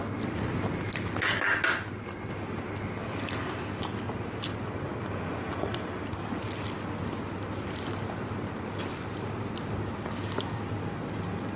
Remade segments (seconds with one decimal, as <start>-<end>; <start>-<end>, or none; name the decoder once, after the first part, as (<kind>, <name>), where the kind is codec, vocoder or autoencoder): none